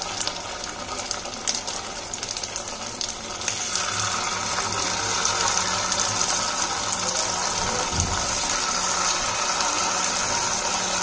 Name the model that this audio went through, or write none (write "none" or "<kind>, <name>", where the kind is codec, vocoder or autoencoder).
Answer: none